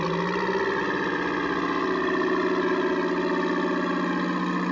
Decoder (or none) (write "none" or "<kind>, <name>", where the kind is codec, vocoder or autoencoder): none